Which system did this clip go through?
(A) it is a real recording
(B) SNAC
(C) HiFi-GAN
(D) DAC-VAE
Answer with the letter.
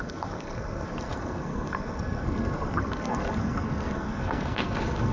B